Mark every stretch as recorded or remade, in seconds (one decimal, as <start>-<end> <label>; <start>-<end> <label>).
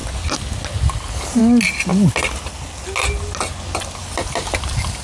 0.0-5.0 recorded